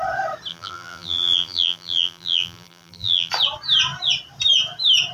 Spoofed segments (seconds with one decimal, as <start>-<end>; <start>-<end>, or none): 0.5-3.3